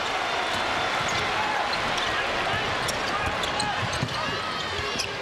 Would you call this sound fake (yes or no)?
no